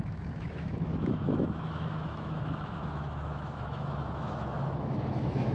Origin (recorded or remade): remade